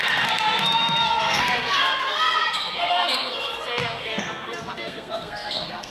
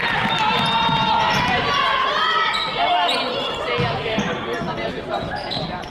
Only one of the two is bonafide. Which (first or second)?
second